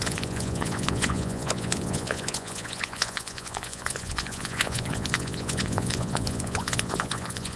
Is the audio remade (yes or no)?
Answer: yes